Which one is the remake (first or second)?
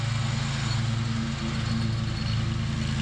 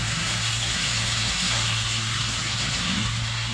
second